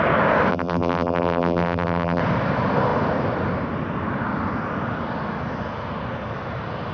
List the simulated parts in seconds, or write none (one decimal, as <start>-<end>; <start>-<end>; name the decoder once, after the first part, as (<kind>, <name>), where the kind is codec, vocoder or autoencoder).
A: 0.5-2.2 (vocoder, BigVGAN v2)